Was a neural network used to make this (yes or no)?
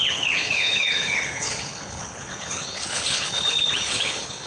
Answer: yes